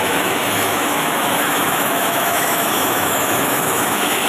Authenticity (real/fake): fake